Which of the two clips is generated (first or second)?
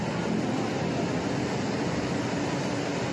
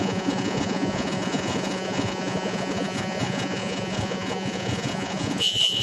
second